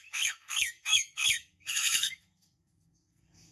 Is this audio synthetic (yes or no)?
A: yes